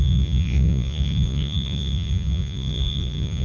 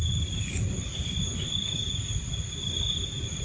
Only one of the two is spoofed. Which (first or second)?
first